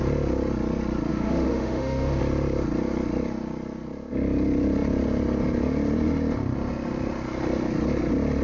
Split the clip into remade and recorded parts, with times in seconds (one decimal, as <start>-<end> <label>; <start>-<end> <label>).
0.0-1.1 recorded; 1.1-2.2 remade; 2.2-8.4 recorded